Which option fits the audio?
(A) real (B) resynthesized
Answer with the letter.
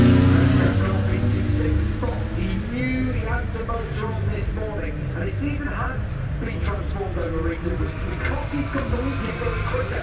A